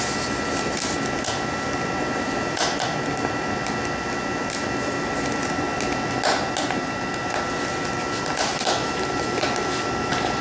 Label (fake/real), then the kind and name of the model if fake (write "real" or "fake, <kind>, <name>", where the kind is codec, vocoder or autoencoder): real